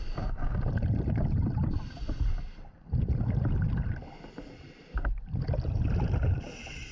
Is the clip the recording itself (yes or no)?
yes